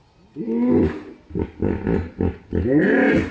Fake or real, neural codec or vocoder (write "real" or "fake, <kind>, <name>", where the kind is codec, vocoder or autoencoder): real